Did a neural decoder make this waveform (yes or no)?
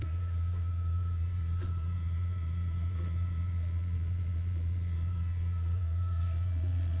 yes